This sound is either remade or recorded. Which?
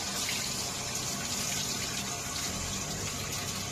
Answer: recorded